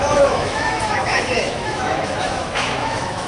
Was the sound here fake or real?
fake